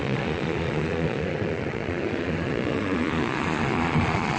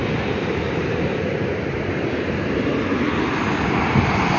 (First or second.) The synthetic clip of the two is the first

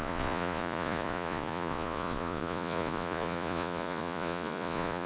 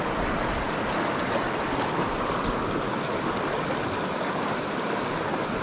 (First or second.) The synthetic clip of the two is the first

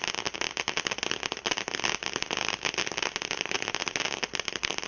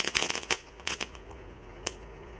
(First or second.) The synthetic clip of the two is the second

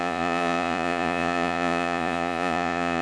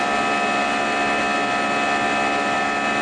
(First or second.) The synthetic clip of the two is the first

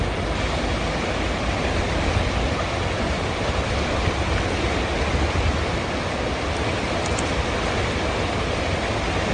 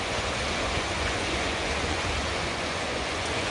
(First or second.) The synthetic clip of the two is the second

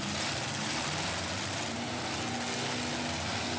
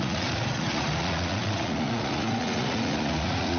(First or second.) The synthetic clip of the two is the second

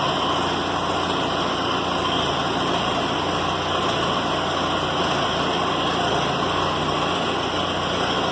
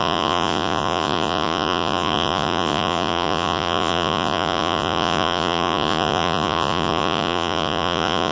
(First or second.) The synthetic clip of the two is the second